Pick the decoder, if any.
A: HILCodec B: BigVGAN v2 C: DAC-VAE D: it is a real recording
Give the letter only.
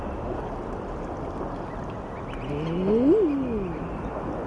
D